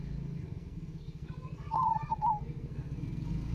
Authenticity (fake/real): fake